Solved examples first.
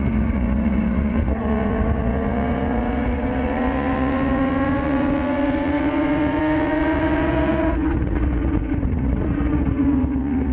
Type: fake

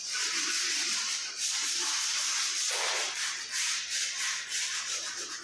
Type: real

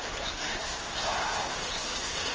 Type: fake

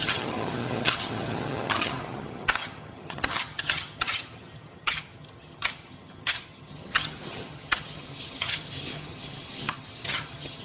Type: fake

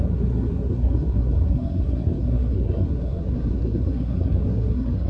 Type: fake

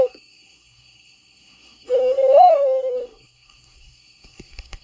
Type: fake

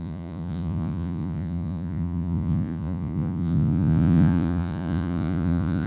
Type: fake